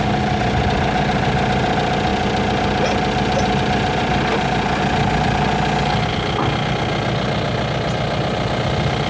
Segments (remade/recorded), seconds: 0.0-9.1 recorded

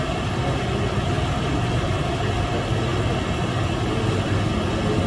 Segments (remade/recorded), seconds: 0.0-5.1 recorded

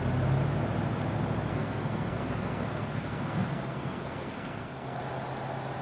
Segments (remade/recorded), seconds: 0.0-1.5 recorded; 1.5-5.0 remade; 5.0-5.8 recorded